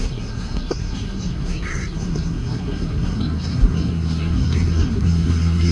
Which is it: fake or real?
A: fake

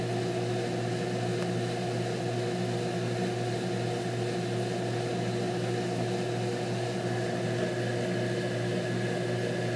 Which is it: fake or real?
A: real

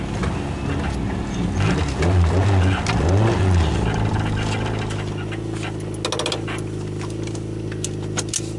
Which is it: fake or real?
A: real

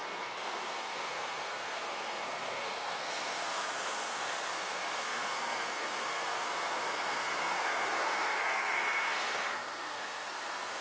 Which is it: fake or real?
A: fake